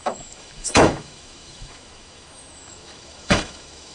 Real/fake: fake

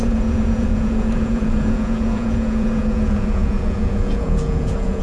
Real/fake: fake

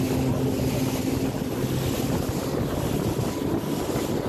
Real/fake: real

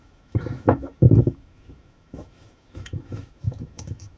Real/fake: fake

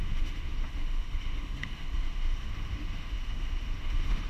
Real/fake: fake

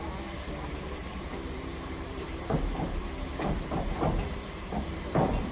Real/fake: fake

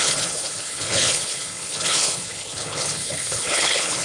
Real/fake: fake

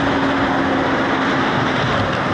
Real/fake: real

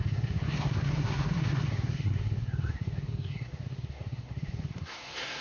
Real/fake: fake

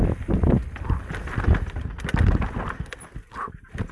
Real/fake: real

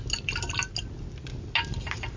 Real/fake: real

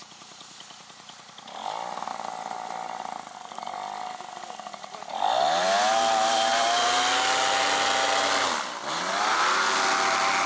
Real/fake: real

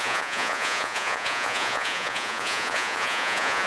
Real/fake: fake